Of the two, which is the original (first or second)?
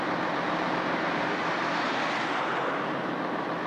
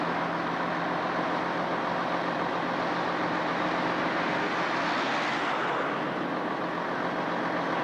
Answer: second